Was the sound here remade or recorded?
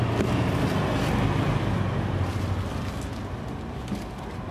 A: recorded